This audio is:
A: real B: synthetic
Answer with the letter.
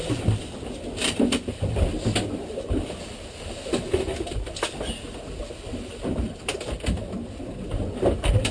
A